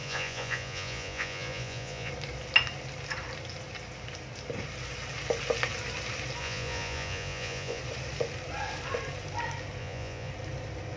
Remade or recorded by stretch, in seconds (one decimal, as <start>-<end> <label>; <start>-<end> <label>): 0.0-2.1 remade; 2.1-6.4 recorded; 6.4-7.8 remade; 7.8-9.8 recorded; 9.8-10.3 remade; 10.3-11.0 recorded